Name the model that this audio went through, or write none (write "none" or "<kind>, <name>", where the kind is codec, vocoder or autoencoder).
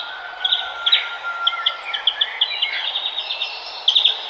none